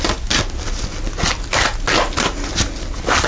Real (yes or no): yes